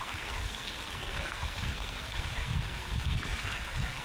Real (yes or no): no